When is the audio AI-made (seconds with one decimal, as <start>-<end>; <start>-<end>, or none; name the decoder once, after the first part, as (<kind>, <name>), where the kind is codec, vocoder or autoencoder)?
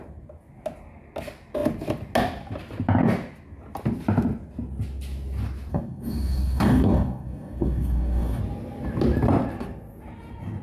5.7-8.4 (codec, DAC)